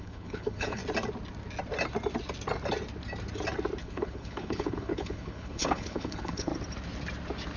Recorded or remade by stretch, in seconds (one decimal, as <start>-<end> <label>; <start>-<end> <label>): 0.0-0.8 remade; 0.8-3.8 recorded; 3.8-6.5 remade; 6.5-7.6 recorded